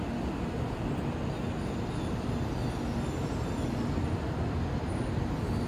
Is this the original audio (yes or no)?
yes